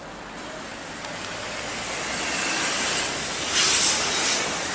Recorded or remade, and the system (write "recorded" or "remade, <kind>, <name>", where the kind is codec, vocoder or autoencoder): recorded